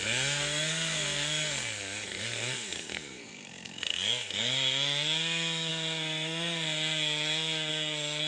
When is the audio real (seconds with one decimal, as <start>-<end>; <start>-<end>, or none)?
none